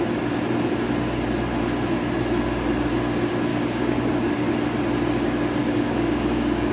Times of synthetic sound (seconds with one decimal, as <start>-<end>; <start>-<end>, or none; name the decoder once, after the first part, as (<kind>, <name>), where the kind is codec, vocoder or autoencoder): 3.5-4.3 (codec, DAC); 5.6-6.7